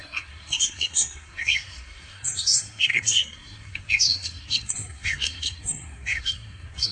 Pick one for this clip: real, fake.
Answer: fake